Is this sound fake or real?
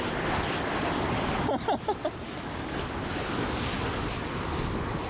real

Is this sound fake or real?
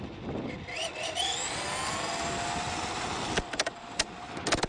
real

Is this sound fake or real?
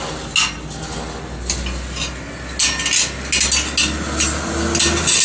real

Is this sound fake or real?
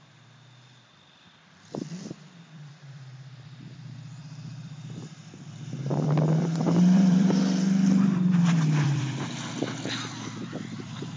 fake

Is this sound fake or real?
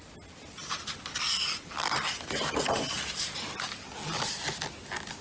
real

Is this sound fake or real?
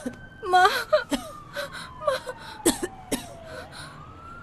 real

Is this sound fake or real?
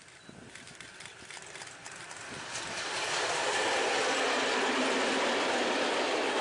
real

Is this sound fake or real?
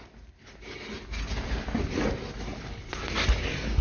real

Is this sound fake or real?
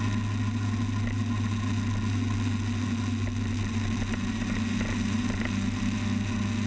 real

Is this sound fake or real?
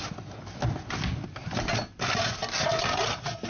real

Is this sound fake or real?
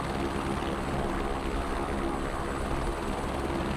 real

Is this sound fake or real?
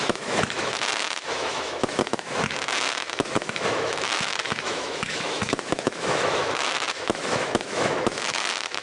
fake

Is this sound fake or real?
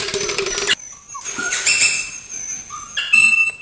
real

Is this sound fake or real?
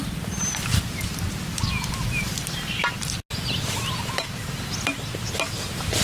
real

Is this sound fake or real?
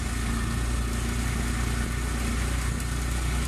real